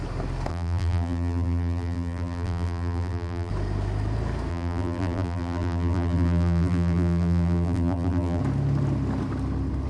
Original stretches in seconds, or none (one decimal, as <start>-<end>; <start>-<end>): 0.0-0.5; 3.5-4.5; 8.4-9.9